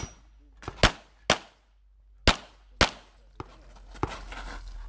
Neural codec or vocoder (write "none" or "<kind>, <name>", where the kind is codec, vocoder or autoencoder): none